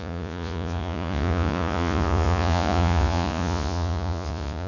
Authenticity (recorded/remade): remade